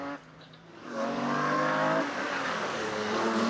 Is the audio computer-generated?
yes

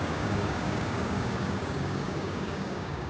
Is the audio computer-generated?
yes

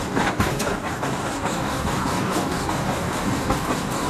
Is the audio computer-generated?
yes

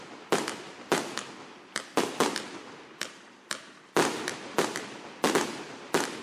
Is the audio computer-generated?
no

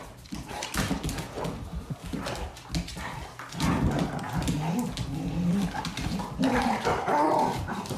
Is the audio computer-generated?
no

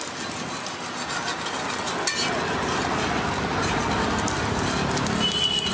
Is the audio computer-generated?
no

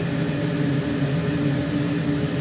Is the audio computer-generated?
no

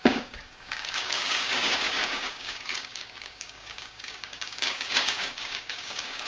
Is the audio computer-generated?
yes